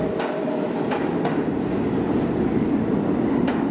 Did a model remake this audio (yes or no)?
no